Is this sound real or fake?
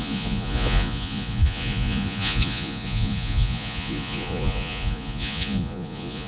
fake